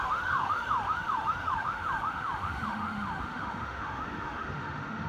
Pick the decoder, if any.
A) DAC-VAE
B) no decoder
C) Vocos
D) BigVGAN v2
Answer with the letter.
A